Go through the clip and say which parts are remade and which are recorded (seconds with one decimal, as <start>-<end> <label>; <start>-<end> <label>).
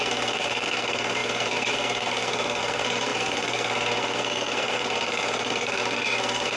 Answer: 0.0-6.6 remade